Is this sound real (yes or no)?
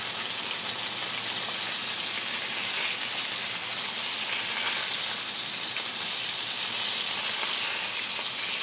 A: yes